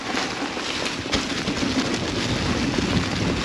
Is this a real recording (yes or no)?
yes